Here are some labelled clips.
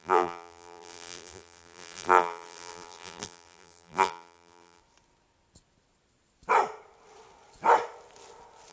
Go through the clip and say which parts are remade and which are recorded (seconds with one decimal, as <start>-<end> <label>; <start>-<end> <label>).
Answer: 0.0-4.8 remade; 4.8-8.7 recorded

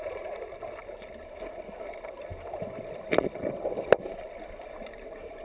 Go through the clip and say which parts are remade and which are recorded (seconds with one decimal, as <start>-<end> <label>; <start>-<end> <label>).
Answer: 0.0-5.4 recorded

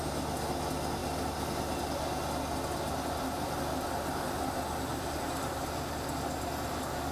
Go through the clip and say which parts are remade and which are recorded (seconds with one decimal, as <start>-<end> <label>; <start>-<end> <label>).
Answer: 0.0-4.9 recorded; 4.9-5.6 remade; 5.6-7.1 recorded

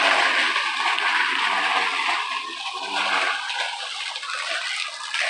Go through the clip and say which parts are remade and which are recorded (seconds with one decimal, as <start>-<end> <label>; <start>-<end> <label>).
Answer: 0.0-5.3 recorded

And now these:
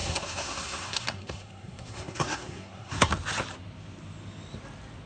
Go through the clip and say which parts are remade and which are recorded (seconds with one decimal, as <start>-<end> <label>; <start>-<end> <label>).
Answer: 0.0-3.1 remade; 3.1-5.1 recorded